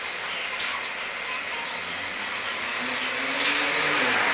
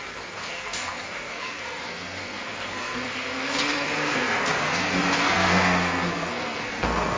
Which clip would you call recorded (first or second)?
first